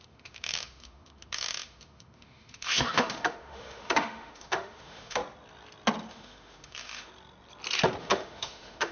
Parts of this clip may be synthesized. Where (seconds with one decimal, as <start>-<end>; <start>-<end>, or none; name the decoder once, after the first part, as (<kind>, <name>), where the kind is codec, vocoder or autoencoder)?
0.0-5.2 (autoencoder, DAC-VAE); 6.1-7.1; 8.0-8.9